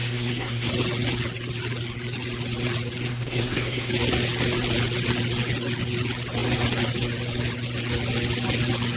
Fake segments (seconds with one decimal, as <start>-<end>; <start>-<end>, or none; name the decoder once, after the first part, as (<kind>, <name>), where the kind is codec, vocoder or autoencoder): 0.0-0.7 (codec, SNAC); 3.1-3.9